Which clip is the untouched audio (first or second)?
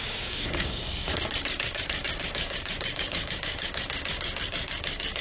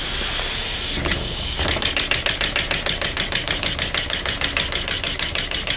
second